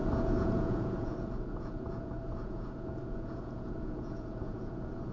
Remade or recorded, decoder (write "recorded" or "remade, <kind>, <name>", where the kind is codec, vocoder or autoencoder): remade, vocoder, Vocos